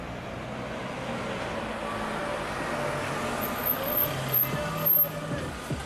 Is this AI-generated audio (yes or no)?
no